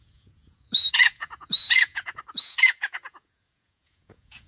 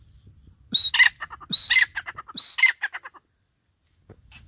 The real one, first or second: second